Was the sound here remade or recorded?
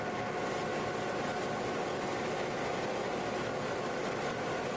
recorded